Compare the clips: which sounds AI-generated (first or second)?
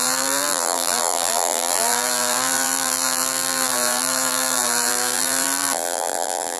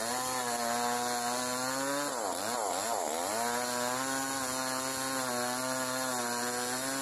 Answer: first